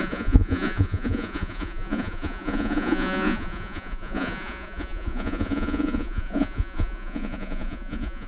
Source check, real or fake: fake